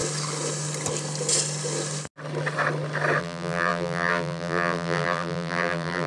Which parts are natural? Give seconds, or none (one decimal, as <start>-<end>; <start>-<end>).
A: 0.0-3.2